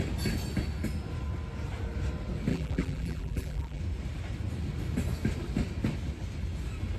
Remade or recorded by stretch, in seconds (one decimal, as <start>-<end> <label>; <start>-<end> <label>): 0.0-2.5 recorded; 2.5-3.8 remade; 3.8-7.0 recorded